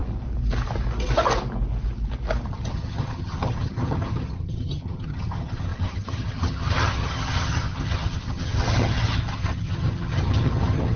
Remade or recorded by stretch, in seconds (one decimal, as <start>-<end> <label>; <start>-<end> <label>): 0.0-2.5 recorded; 2.5-11.0 remade